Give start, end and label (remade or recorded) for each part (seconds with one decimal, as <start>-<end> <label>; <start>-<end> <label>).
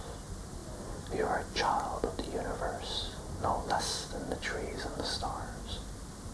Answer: 0.0-4.5 recorded; 4.5-5.7 remade; 5.7-6.3 recorded